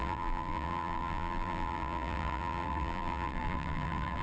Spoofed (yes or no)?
yes